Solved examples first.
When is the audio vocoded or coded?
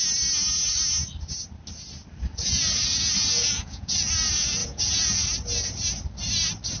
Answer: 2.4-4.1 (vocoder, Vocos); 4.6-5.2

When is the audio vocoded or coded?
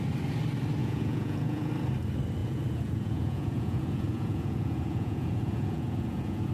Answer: 0.8-1.7 (vocoder, Vocos); 2.4-6.5